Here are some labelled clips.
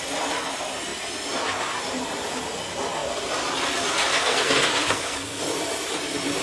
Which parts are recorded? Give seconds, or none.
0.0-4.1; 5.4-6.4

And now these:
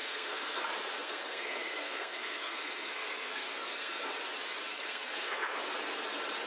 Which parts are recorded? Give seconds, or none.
0.6-1.0; 4.1-4.7; 5.6-6.5

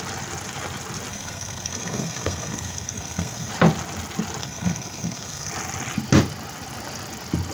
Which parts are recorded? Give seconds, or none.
0.0-1.1; 3.5-4.4; 5.5-7.5

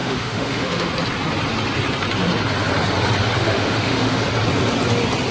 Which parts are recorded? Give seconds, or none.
0.9-3.4; 4.2-5.3

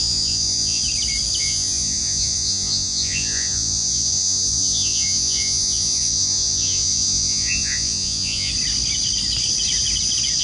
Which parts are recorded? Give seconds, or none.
0.8-1.4; 8.5-10.4

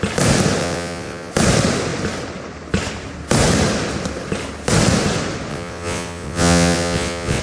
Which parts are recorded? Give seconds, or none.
0.0-0.6; 1.3-5.5

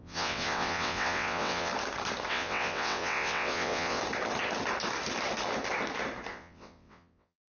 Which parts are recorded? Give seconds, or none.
1.7-2.3; 4.0-6.3

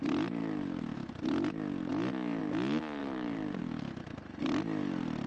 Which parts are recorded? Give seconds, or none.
0.0-0.4; 1.1-3.0; 3.6-5.3